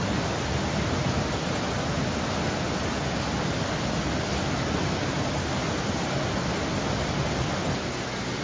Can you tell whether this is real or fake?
real